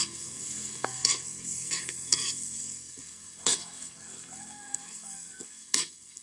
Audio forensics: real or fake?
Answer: fake